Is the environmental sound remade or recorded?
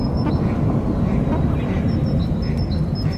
recorded